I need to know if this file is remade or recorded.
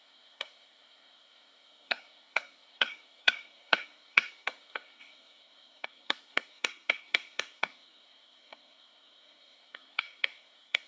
remade